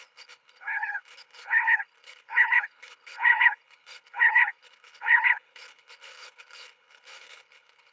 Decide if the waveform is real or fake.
fake